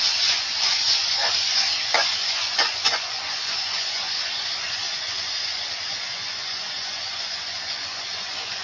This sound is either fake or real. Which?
fake